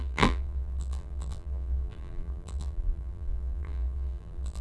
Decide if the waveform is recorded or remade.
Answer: remade